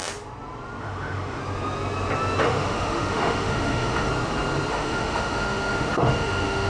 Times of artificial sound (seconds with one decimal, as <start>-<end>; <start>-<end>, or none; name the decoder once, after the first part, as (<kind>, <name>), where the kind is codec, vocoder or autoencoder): 0.8-1.4 (autoencoder, DAC-VAE); 2.4-4.1; 4.7-6.7